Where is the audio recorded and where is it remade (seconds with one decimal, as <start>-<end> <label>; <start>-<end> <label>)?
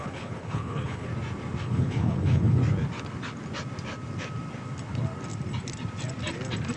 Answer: 0.0-1.1 remade; 1.1-1.6 recorded; 1.6-2.6 remade; 2.6-6.8 recorded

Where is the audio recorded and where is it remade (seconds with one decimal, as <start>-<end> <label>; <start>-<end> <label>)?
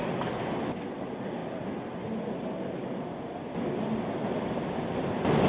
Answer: 0.0-5.5 recorded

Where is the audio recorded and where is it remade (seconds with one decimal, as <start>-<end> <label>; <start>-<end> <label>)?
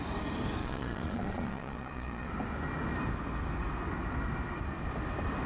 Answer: 0.0-0.6 recorded; 0.6-2.3 remade; 2.3-5.5 recorded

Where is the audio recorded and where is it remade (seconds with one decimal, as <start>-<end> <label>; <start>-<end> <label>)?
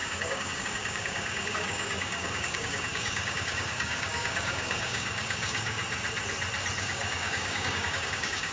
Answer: 0.0-5.8 remade; 5.8-6.8 recorded; 6.8-8.5 remade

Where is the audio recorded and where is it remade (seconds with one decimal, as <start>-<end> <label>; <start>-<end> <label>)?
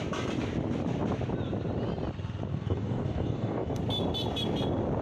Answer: 0.0-2.5 recorded; 2.5-3.8 remade; 3.8-5.0 recorded